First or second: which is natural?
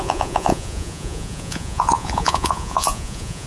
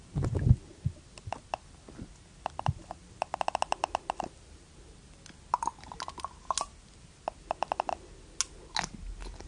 second